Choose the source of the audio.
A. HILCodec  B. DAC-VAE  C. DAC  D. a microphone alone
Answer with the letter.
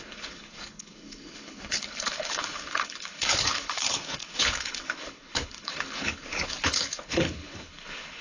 A